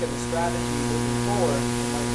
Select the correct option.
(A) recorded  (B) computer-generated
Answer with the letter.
A